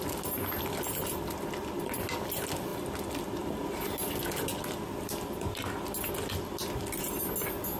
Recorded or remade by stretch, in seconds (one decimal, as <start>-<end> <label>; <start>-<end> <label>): 0.0-7.8 recorded